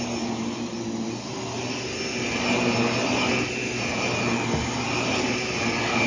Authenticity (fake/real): real